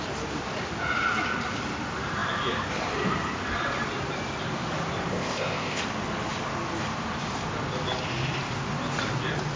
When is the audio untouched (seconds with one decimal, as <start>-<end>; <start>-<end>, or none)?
0.0-5.1; 5.8-9.6